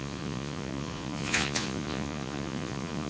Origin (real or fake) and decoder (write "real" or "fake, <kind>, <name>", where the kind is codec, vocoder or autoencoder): fake, vocoder, Vocos